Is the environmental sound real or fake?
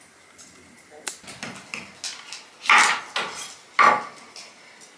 real